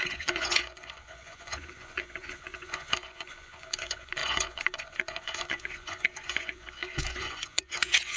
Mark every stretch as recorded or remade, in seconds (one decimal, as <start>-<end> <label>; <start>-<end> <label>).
0.0-8.2 remade